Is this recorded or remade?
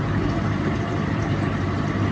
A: remade